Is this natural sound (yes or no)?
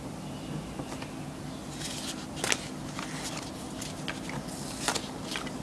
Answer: yes